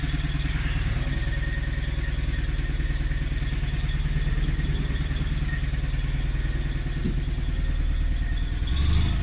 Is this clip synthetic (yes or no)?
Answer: no